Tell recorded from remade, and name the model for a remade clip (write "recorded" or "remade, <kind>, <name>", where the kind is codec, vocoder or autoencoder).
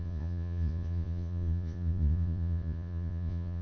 remade, vocoder, Vocos